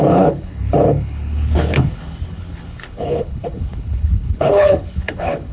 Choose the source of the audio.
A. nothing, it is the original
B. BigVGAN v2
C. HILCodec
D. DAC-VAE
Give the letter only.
C